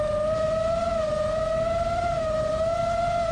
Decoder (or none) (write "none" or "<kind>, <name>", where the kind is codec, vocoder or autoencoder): none